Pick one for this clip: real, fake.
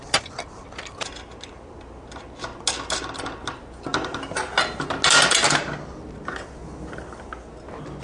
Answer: real